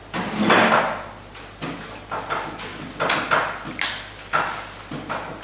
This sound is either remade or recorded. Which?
recorded